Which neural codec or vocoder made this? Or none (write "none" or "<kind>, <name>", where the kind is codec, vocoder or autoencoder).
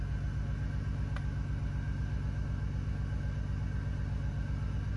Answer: none